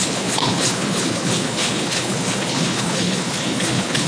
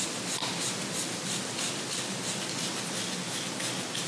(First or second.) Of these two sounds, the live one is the second